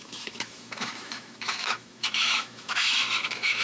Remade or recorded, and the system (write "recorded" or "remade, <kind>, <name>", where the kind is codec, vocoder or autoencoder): remade, autoencoder, DAC-VAE